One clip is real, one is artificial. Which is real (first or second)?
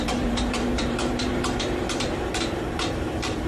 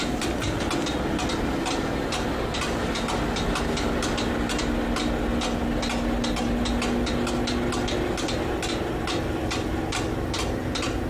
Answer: second